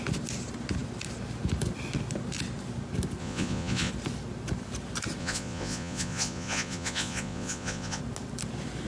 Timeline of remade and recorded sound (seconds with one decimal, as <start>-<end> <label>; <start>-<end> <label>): 0.0-3.2 recorded; 3.2-3.9 remade; 3.9-5.2 recorded; 5.2-8.0 remade; 8.0-8.9 recorded